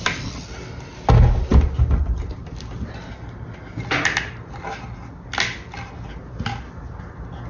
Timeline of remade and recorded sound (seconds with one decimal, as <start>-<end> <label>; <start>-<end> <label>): 0.0-7.5 recorded